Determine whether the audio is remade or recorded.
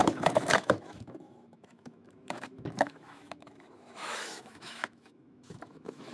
remade